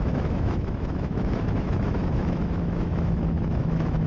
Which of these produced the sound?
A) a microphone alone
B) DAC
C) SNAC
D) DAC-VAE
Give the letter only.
D